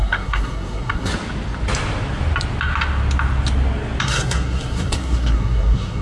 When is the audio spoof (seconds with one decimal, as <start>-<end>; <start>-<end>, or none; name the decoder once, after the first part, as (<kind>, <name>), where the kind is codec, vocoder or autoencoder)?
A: 0.0-1.1 (codec, SNAC); 4.0-6.0